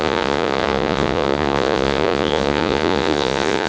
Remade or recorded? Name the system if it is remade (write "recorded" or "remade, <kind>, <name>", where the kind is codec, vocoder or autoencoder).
remade, vocoder, Vocos